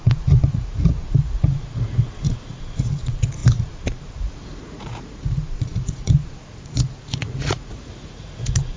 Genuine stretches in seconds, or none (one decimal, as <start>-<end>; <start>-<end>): none